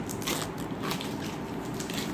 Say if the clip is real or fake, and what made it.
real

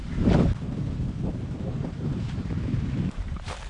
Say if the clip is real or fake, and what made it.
fake, vocoder, BigVGAN v2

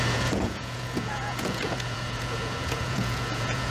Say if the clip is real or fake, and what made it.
fake, vocoder, Vocos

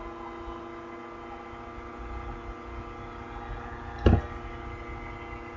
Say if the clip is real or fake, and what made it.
real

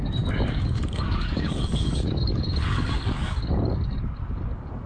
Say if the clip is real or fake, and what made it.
fake, codec, DAC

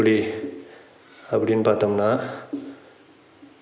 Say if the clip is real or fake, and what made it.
real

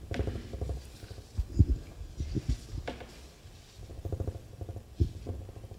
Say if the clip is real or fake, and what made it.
real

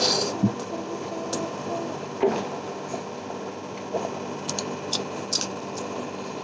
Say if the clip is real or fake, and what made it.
real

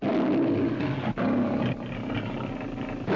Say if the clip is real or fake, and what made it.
real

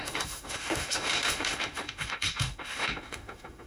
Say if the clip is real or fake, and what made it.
fake, autoencoder, DAC-VAE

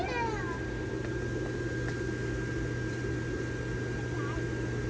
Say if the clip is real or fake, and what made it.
real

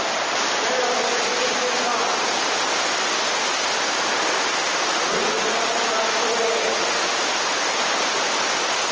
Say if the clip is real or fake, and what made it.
real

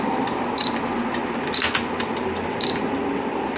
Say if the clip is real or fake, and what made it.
real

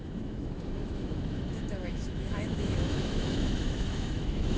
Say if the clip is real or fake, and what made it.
fake, autoencoder, DAC-VAE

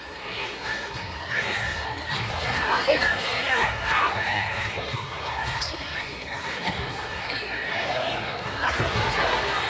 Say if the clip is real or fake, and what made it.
fake, codec, SNAC